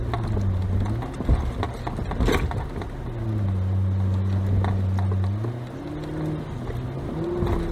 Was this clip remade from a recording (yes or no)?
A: no